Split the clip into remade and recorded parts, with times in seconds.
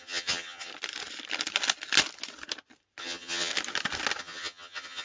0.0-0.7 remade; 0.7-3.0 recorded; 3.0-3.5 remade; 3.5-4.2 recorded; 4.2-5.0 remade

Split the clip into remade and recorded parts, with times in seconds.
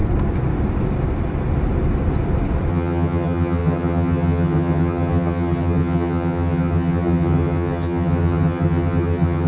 0.0-2.7 recorded; 2.7-9.5 remade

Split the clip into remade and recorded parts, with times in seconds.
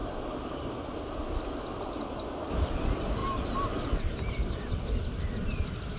0.0-6.0 recorded